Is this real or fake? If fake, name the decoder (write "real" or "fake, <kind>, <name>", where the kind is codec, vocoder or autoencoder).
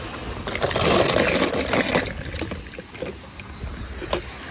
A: real